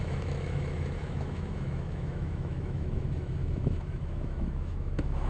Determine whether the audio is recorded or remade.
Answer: remade